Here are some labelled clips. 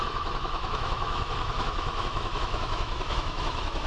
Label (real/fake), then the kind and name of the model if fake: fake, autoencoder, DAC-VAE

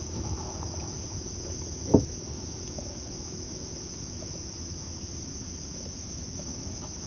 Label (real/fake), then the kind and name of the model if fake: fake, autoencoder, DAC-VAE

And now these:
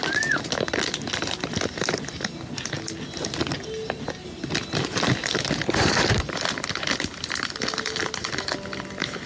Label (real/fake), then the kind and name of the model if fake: real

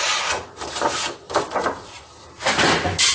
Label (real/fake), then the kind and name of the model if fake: real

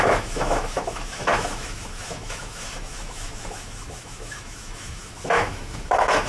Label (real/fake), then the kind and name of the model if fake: fake, autoencoder, DAC-VAE